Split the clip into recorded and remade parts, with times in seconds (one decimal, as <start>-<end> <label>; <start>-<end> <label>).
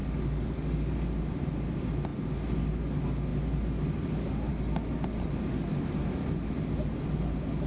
0.0-0.9 remade; 0.9-7.7 recorded